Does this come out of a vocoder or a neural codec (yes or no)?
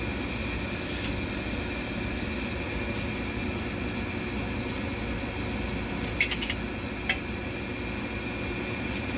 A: no